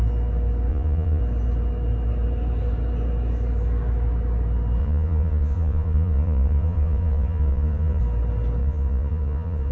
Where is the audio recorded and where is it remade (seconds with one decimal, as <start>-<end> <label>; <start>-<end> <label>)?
0.0-0.7 recorded; 0.7-1.2 remade; 1.2-4.8 recorded; 4.8-8.0 remade; 8.0-8.6 recorded; 8.6-9.7 remade

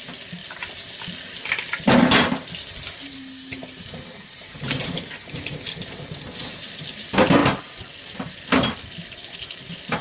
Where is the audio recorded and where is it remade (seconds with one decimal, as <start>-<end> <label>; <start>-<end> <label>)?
0.0-4.1 recorded; 4.1-5.4 remade; 5.4-10.0 recorded

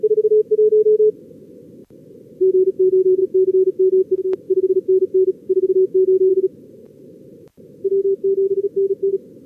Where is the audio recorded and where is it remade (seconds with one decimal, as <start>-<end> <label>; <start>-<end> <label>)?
0.0-1.8 recorded; 1.8-3.2 remade; 3.2-6.3 recorded; 6.3-9.1 remade; 9.1-9.5 recorded

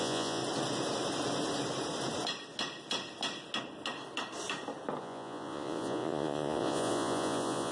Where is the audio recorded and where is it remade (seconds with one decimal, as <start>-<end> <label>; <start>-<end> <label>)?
0.0-0.4 remade; 0.4-5.0 recorded; 5.0-7.7 remade

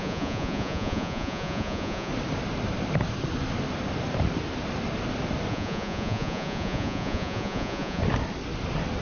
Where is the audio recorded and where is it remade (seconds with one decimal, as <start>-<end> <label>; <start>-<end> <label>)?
0.0-2.1 remade; 2.1-5.5 recorded; 5.5-8.0 remade; 8.0-9.0 recorded

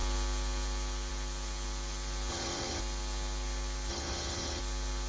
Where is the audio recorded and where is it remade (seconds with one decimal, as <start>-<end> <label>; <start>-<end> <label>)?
0.0-2.3 recorded; 2.3-2.8 remade; 2.8-3.9 recorded; 3.9-4.6 remade; 4.6-5.1 recorded

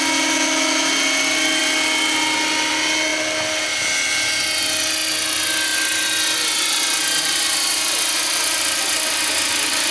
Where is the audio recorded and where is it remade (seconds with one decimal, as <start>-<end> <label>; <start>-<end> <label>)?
0.0-9.9 recorded